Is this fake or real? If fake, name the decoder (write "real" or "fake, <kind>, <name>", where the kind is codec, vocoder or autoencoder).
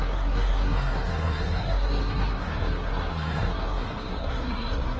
fake, codec, SNAC